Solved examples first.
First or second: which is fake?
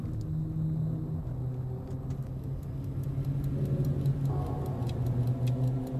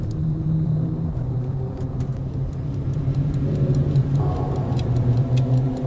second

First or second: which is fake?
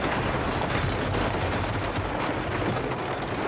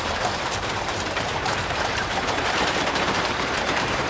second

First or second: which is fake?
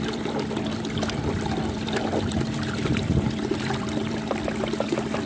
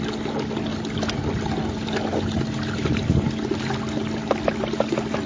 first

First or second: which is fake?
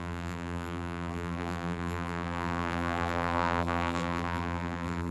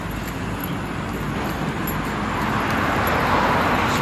first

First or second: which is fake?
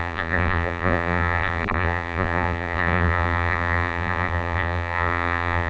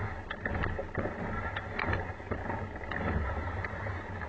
first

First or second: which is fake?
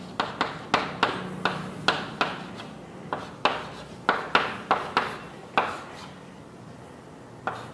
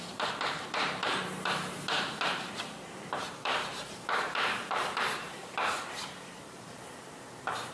second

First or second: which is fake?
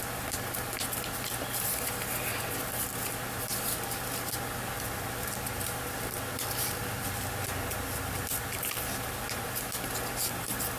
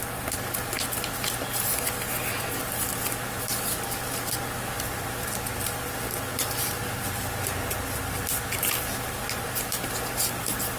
first